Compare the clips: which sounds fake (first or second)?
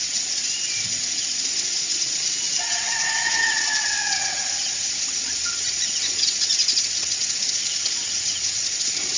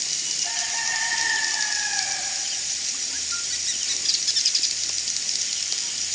first